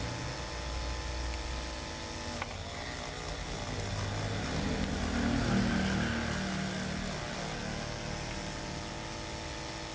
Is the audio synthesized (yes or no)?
no